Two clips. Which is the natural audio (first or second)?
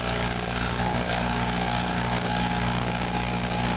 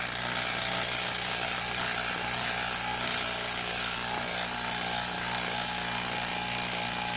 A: second